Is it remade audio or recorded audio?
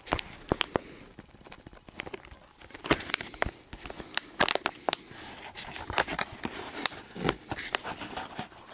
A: recorded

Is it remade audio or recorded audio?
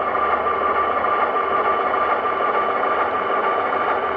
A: recorded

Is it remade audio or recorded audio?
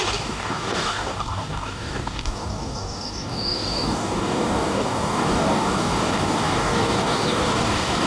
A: remade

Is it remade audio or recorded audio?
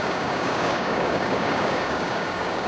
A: remade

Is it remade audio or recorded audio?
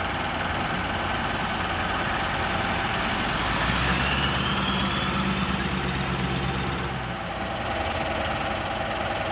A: recorded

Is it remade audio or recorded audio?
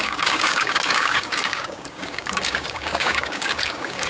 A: remade